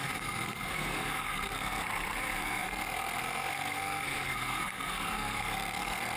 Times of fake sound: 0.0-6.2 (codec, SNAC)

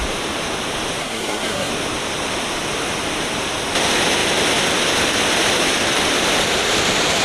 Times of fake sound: 1.0-1.7 (codec, SNAC)

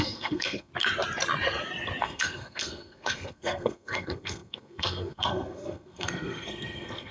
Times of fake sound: 0.0-0.7 (codec, SNAC); 2.0-7.1

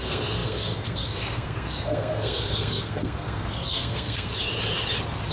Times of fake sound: 0.0-4.3 (codec, SNAC)

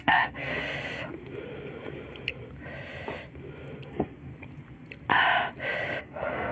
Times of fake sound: 0.0-0.5 (codec, SNAC); 3.9-4.3; 6.0-6.5

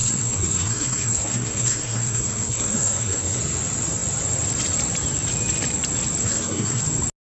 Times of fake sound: 0.0-3.4 (codec, SNAC); 6.2-6.8

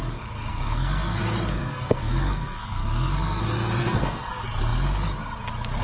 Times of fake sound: 0.5-1.2 (codec, SNAC); 1.6-3.4; 3.8-4.3

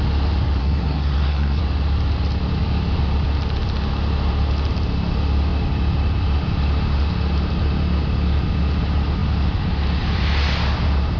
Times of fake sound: 0.6-1.6 (codec, SNAC)